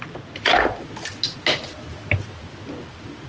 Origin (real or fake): real